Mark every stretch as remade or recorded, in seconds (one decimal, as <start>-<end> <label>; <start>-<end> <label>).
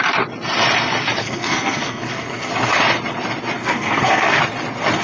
0.0-1.2 recorded; 1.2-2.5 remade; 2.5-3.6 recorded; 3.6-4.4 remade; 4.4-5.0 recorded